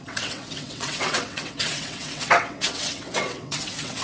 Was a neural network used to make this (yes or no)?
yes